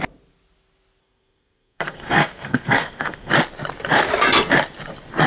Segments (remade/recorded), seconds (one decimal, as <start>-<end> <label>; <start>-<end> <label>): 0.0-1.0 recorded; 1.0-3.3 remade; 3.3-5.3 recorded